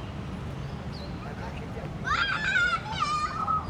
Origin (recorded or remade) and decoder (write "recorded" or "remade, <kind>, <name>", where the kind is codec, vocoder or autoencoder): recorded